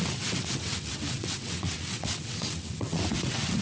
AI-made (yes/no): yes